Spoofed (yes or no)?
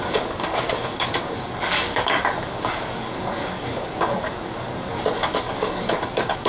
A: yes